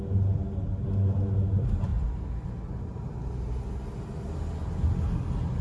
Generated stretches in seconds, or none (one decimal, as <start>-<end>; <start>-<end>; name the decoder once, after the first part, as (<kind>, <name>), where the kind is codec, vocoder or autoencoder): none